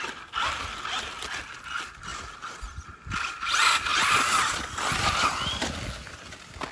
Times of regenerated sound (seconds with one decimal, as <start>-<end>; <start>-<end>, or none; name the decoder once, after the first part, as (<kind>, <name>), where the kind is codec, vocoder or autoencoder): none